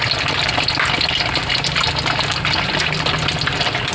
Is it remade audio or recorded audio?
recorded